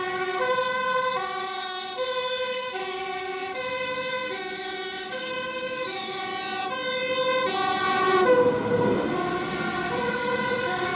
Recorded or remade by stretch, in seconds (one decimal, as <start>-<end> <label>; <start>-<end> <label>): 0.0-6.3 remade; 6.3-10.1 recorded; 10.1-11.0 remade